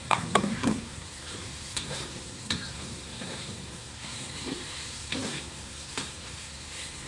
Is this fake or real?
fake